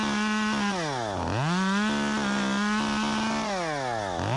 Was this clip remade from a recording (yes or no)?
no